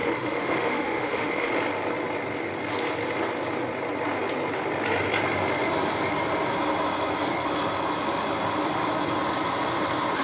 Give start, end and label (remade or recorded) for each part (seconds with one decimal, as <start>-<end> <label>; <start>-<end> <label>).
0.0-1.5 remade; 1.5-10.2 recorded